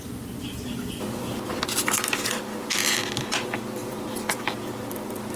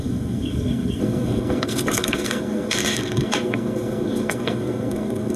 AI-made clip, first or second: second